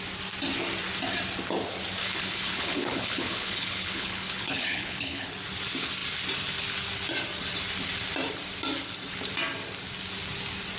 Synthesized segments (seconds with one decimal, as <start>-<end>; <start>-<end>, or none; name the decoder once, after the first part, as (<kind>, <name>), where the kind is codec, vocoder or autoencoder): 2.0-5.3 (codec, HILCodec)